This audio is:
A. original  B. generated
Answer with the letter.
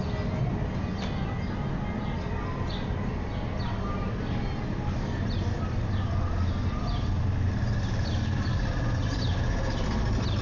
A